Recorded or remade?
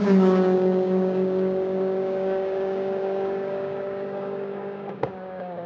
remade